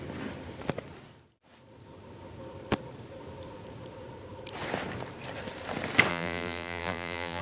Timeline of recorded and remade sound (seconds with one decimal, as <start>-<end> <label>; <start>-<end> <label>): 0.0-6.1 recorded; 6.1-7.4 remade